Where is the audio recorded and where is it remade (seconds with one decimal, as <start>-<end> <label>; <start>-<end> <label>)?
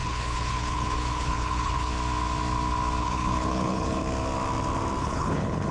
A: 0.0-1.9 remade; 1.9-3.0 recorded; 3.0-4.0 remade; 4.0-5.0 recorded; 5.0-5.7 remade